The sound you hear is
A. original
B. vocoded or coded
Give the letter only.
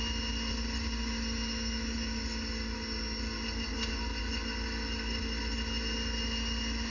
A